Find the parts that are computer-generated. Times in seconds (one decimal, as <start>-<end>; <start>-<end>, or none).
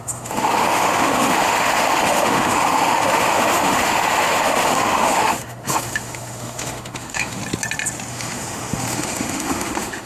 0.0-7.4; 8.1-10.1